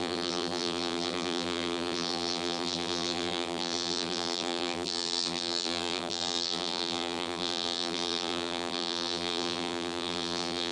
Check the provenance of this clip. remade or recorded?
remade